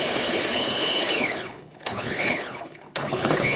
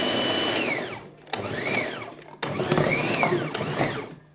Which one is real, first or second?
second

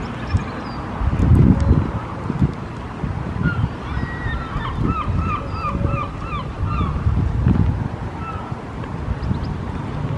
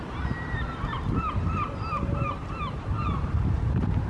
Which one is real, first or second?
first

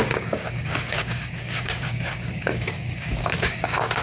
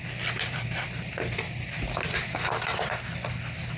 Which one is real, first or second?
second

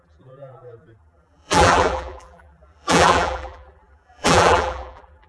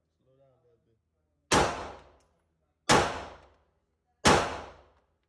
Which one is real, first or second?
second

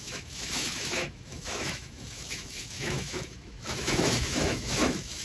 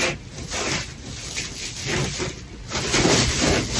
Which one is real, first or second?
second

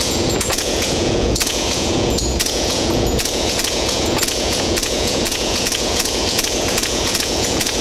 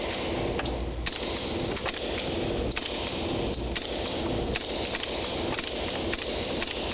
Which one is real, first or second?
second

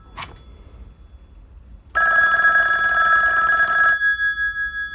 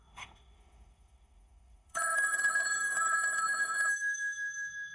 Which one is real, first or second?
first